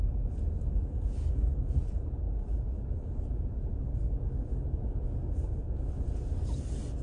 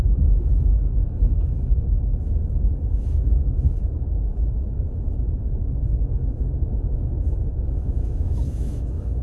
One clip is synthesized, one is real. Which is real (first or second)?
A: first